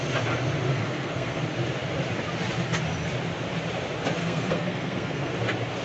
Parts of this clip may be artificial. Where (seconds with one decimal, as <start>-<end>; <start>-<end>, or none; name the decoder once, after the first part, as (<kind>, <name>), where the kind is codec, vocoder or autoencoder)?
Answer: 0.7-1.4 (codec, SNAC); 4.2-5.3